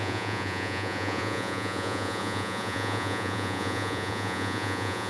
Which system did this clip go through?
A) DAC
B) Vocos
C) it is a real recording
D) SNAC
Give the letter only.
B